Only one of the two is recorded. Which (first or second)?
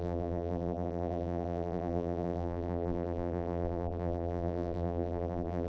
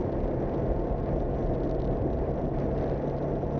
second